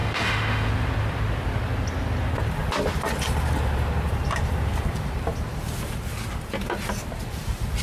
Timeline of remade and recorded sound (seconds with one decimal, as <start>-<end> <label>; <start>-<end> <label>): 0.0-0.7 remade; 0.7-7.8 recorded